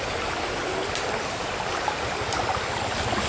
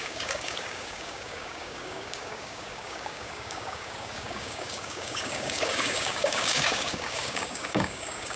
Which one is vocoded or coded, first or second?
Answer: second